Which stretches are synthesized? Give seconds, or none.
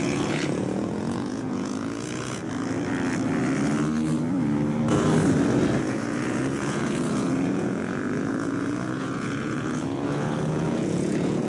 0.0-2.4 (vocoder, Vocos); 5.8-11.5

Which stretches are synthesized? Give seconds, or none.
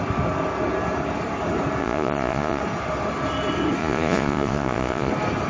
1.8-2.6 (vocoder, Vocos); 3.8-5.1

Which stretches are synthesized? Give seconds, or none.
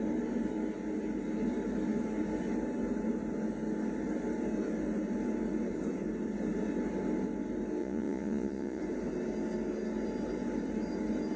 7.8-8.8 (vocoder, Vocos)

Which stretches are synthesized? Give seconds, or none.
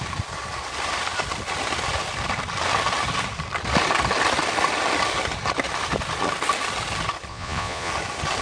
7.3-7.9 (vocoder, Vocos)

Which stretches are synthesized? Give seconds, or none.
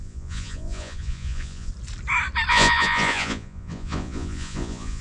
0.0-1.7 (vocoder, Vocos); 2.5-5.0